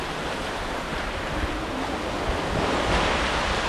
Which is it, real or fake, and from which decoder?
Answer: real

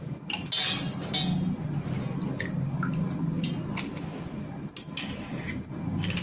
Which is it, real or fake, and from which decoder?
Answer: real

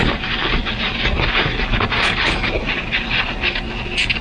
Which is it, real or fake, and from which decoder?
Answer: real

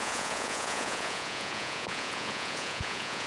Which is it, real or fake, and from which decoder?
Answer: fake, vocoder, Vocos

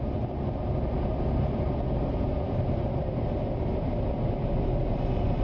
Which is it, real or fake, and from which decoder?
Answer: real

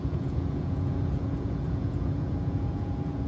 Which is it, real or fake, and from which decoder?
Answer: fake, vocoder, Vocos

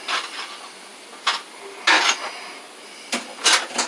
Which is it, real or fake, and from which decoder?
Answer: real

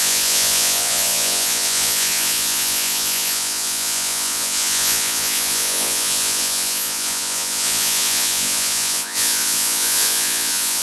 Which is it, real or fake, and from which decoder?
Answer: fake, vocoder, Vocos